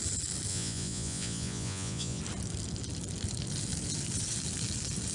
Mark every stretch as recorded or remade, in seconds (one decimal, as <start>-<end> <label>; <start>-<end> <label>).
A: 0.0-0.5 recorded; 0.5-2.2 remade; 2.2-5.1 recorded